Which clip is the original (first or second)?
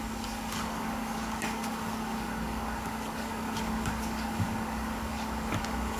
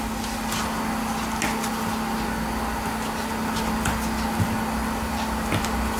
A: second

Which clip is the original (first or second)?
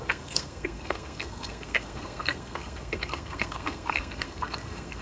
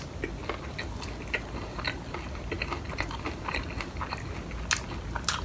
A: second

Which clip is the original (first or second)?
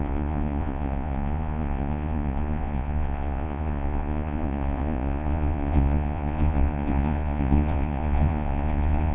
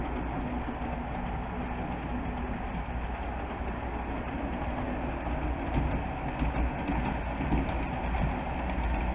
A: second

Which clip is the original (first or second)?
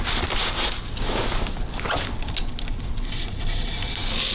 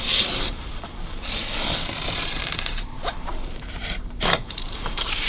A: first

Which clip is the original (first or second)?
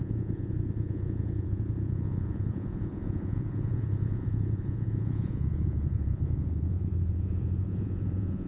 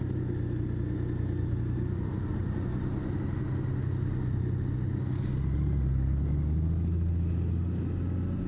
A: second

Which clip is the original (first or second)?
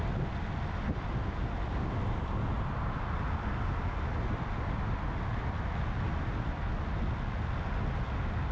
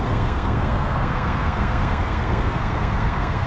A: first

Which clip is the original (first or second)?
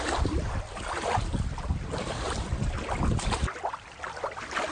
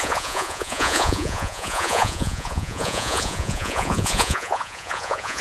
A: first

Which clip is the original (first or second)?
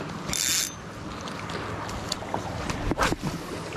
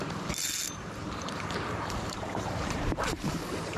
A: first